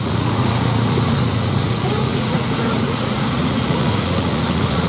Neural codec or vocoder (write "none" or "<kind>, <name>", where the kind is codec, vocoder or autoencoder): vocoder, Vocos